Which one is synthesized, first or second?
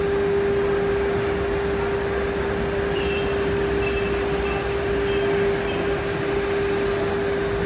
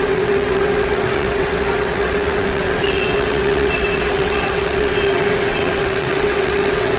second